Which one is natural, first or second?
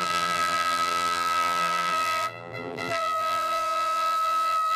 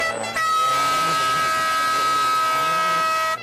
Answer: second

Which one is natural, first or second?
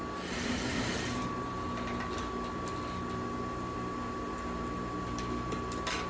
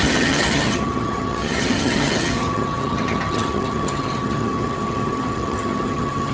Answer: first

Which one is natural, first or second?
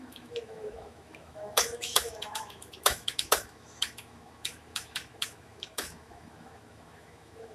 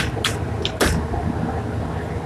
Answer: second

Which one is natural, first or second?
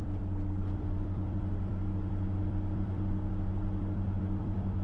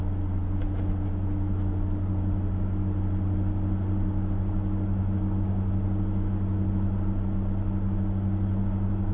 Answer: second